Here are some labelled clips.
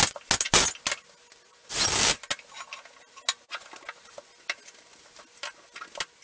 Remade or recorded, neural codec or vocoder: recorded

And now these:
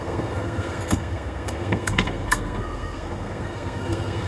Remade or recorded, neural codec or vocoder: remade, codec, SNAC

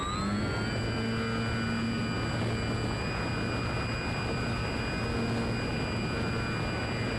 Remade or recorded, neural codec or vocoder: recorded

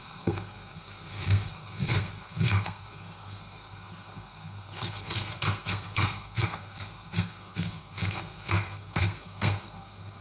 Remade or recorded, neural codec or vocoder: remade, codec, SNAC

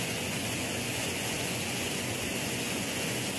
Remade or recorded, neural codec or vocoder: remade, vocoder, Vocos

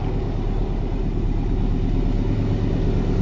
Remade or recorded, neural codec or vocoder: recorded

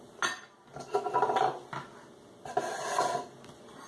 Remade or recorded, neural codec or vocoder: recorded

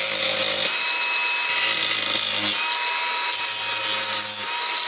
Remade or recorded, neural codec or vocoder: recorded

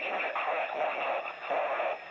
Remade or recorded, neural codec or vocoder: recorded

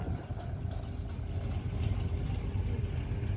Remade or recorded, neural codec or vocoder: recorded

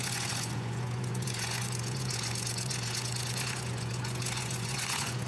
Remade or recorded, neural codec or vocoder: remade, vocoder, Vocos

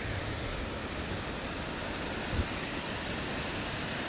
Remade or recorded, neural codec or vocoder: remade, vocoder, BigVGAN v2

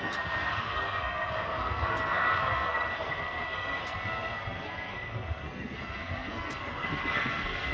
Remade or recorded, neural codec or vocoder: remade, codec, SNAC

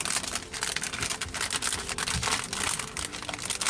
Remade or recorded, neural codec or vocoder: recorded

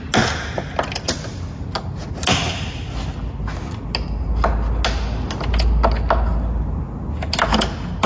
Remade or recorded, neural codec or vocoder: recorded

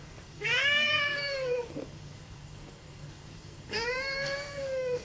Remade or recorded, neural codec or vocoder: remade, codec, SNAC